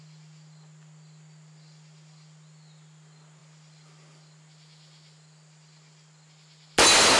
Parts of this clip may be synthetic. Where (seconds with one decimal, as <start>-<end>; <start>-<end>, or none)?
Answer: none

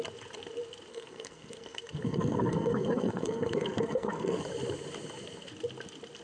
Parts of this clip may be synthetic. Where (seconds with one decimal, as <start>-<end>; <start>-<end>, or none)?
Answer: 0.9-4.4

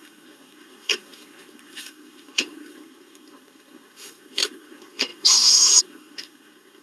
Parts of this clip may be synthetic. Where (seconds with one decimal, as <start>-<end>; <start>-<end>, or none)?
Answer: 0.0-6.8

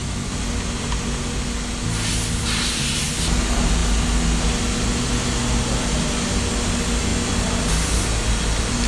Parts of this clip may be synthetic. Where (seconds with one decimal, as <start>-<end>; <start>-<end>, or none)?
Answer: none

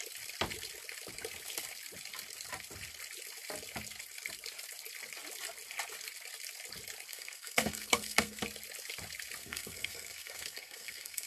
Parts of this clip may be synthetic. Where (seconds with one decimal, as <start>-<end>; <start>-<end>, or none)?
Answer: 7.1-8.4; 9.4-11.3

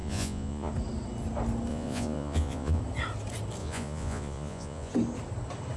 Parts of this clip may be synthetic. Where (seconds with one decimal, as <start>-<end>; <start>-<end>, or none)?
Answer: 0.0-0.7; 1.7-2.8; 3.6-4.9